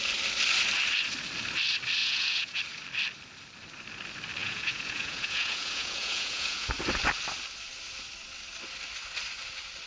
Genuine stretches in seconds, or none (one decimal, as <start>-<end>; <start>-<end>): 0.0-2.0; 2.6-4.4; 6.7-9.9